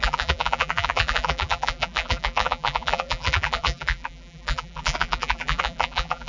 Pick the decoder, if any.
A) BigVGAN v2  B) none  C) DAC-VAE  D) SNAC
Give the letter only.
A